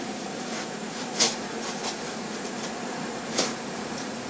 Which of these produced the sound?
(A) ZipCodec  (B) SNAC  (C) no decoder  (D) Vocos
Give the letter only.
D